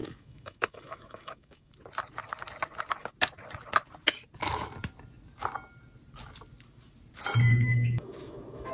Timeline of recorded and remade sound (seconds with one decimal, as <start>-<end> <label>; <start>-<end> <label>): 0.0-1.7 remade; 1.7-7.5 recorded; 7.5-8.7 remade